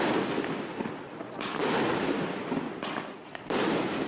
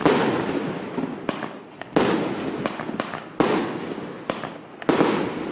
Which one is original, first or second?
second